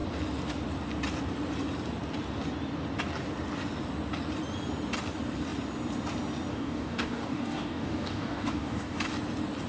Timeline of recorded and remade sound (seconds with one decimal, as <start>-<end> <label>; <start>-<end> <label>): 0.0-6.5 recorded; 6.5-9.0 remade; 9.0-9.7 recorded